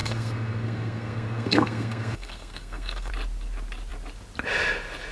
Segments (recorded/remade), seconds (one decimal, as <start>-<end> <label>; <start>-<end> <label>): 0.0-3.1 remade; 3.1-5.1 recorded